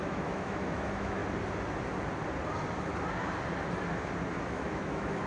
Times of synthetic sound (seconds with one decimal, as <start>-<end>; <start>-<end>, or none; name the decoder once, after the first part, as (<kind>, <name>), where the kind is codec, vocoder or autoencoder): 0.0-1.2 (autoencoder, DAC-VAE); 4.4-5.3